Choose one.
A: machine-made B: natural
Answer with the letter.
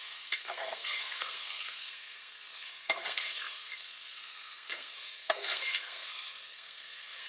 A